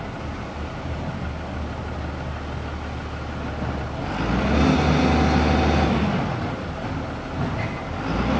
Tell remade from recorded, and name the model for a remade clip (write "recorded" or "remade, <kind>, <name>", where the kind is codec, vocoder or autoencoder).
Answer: recorded